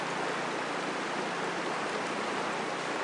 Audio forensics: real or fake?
real